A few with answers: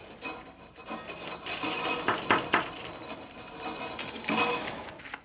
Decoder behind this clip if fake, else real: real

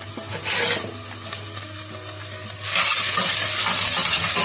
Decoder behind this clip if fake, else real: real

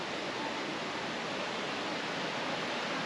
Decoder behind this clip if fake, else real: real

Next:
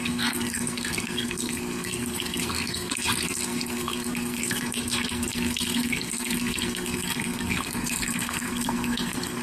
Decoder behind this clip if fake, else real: fake, codec, SNAC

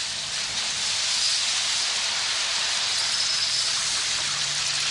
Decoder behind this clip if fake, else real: real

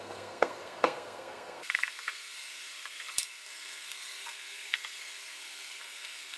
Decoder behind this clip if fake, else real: fake, codec, SNAC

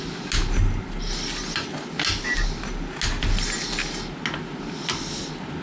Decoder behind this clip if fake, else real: real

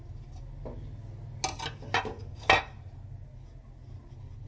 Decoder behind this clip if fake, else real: real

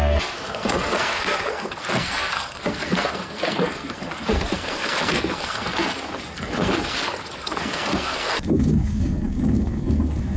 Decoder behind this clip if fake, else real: fake, codec, SNAC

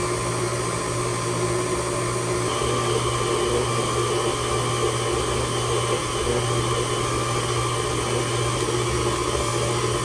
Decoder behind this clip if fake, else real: real